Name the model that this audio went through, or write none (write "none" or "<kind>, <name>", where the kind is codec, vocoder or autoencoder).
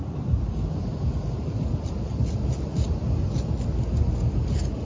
none